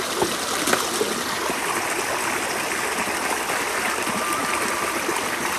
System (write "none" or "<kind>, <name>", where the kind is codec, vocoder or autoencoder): none